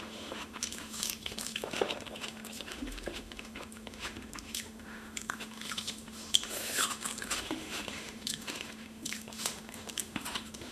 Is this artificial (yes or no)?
yes